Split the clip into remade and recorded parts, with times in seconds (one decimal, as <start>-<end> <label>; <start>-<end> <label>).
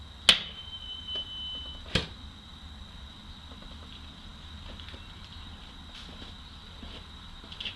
0.0-7.8 recorded